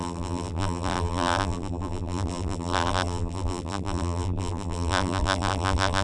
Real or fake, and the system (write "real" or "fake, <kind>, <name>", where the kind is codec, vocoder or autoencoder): fake, vocoder, BigVGAN v2